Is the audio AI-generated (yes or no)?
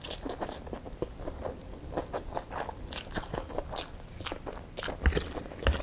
no